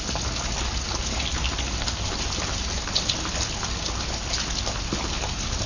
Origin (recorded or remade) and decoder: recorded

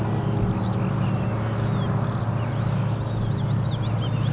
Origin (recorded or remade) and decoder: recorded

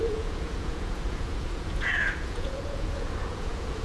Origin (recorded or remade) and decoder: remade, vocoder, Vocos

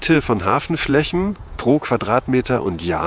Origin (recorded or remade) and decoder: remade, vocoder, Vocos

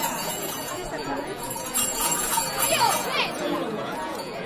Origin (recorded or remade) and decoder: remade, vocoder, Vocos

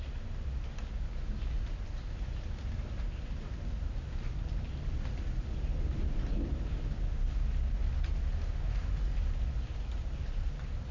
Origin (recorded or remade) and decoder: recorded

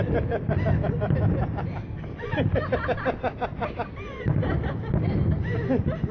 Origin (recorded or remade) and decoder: recorded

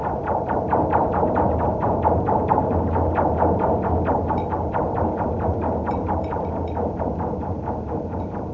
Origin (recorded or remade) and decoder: recorded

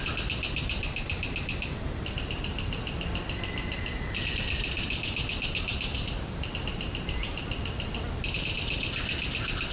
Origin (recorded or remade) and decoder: recorded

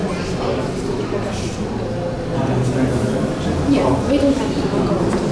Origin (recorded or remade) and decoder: recorded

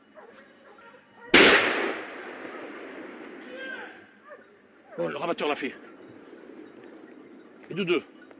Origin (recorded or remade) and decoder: recorded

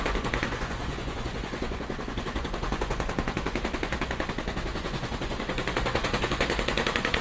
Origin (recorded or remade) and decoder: remade, vocoder, Vocos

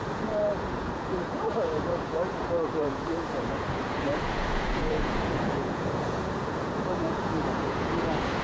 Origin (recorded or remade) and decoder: remade, vocoder, Vocos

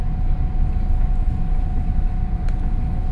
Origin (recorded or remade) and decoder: recorded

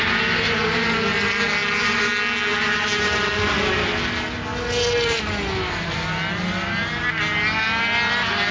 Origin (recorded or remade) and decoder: recorded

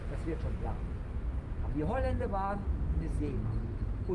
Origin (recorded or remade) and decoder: recorded